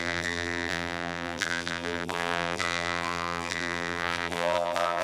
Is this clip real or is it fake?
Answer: fake